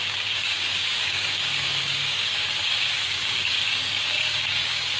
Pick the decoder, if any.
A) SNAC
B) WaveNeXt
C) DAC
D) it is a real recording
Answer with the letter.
C